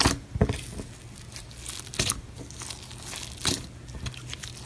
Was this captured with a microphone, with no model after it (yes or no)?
yes